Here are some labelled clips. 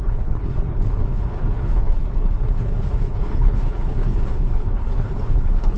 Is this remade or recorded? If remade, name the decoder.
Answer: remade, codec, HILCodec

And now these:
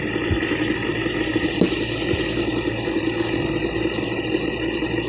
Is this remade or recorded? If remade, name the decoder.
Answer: recorded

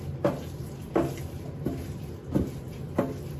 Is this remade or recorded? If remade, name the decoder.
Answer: recorded